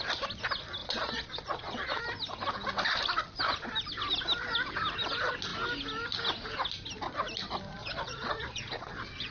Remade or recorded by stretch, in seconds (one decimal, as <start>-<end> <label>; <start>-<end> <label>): 0.0-0.8 recorded; 0.8-2.0 remade; 2.0-7.8 recorded; 7.8-9.3 remade